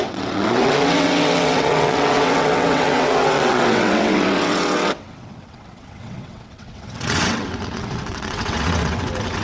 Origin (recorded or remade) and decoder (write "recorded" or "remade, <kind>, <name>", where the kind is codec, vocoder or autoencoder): remade, vocoder, WaveNeXt